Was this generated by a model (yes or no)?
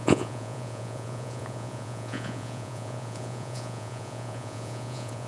yes